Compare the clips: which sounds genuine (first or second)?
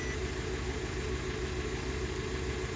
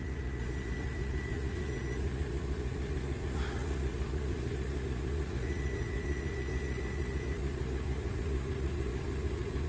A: first